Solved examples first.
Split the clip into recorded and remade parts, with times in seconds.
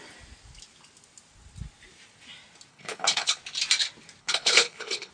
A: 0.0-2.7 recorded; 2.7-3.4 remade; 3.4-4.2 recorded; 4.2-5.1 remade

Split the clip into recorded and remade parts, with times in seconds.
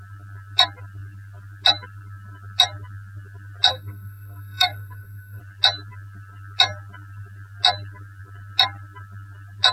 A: 0.0-3.7 recorded; 3.7-5.4 remade; 5.4-9.7 recorded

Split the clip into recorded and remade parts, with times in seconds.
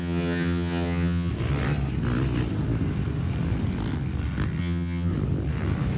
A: 0.0-1.3 remade; 1.3-4.6 recorded; 4.6-5.1 remade; 5.1-6.0 recorded